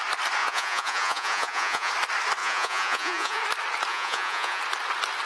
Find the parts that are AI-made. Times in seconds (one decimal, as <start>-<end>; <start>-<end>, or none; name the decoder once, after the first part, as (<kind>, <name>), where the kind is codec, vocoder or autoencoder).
0.4-1.9 (vocoder, Vocos); 2.4-3.4; 3.9-4.6